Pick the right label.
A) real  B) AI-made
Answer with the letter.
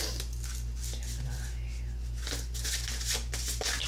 A